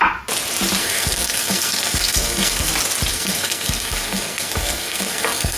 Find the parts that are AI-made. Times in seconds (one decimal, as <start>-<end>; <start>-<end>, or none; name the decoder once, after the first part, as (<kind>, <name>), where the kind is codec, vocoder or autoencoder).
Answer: 0.8-2.7 (codec, SNAC); 3.1-5.6